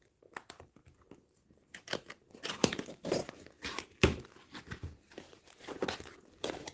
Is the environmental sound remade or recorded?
remade